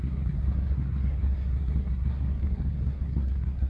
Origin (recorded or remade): remade